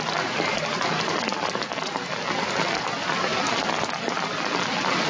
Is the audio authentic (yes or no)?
yes